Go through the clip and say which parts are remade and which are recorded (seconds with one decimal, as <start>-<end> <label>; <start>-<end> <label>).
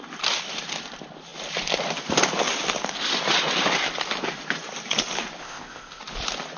0.0-5.4 recorded; 5.4-6.0 remade; 6.0-6.6 recorded